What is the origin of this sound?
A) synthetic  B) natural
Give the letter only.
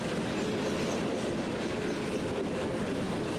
B